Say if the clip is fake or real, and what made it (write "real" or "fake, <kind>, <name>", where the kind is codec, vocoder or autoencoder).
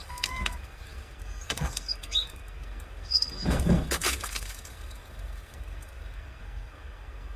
fake, codec, SNAC